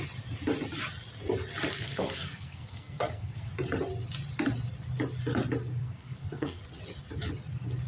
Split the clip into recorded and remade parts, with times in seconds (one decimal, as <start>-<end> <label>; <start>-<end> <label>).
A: 0.0-1.8 recorded; 1.8-3.5 remade; 3.5-5.8 recorded; 5.8-6.6 remade; 6.6-7.9 recorded